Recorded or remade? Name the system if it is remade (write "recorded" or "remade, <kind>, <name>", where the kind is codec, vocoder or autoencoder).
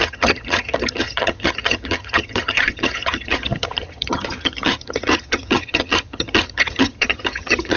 remade, vocoder, HiFi-GAN